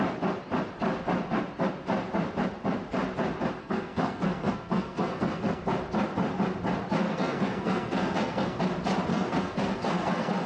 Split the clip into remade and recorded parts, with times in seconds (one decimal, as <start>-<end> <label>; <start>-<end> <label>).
0.0-3.6 recorded; 3.6-5.6 remade; 5.6-7.1 recorded; 7.1-8.6 remade; 8.6-9.1 recorded; 9.1-10.5 remade